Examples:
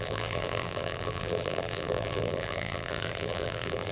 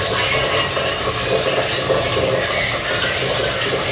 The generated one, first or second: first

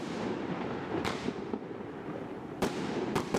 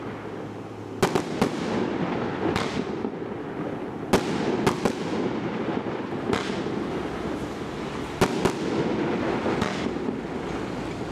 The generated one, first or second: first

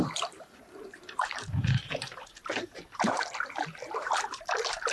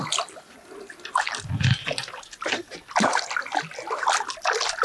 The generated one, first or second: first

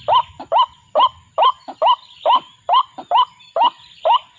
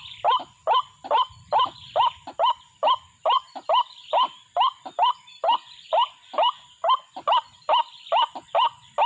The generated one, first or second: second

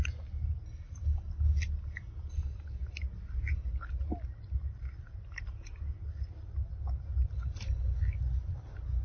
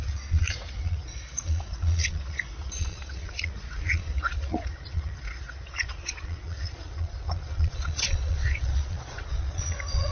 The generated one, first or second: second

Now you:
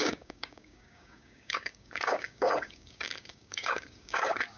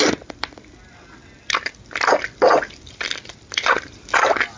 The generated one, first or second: first